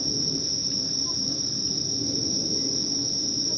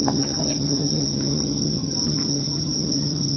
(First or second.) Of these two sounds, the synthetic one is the second